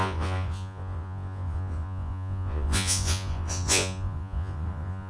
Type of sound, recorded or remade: remade